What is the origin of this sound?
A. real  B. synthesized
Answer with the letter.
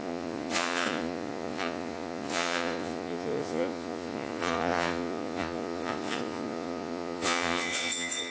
B